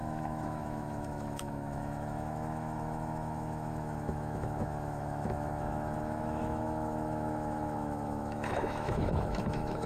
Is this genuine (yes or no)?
no